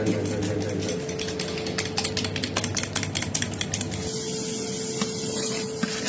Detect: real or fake real